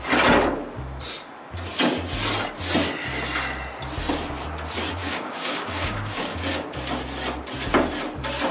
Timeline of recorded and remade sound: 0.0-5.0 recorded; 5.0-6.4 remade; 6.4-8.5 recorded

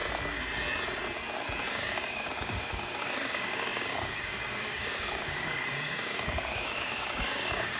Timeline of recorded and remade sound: 0.0-1.7 recorded; 1.7-7.8 remade

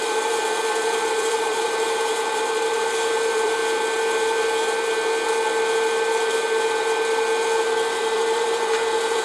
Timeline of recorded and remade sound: 0.0-3.6 remade; 3.6-8.0 recorded; 8.0-9.2 remade

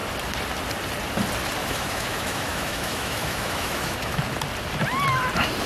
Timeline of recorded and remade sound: 0.0-1.6 recorded; 1.6-4.2 remade; 4.2-5.7 recorded